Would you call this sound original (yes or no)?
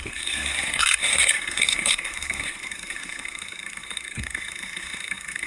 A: no